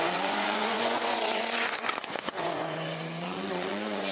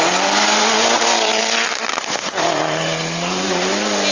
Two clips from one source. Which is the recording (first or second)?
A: second